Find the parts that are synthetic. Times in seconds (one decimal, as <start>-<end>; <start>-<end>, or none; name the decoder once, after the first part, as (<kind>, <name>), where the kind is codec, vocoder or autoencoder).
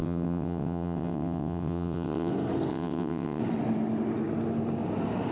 0.0-2.3 (vocoder, WaveNeXt); 2.7-3.4